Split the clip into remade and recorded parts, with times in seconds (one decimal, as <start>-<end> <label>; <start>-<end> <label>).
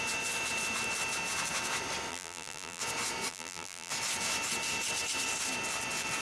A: 0.0-2.1 recorded; 2.1-2.8 remade; 2.8-3.3 recorded; 3.3-3.9 remade; 3.9-6.2 recorded